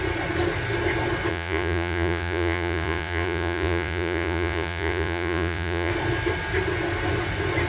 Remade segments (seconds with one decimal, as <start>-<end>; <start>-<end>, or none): 1.3-5.9